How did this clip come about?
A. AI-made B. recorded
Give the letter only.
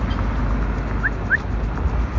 B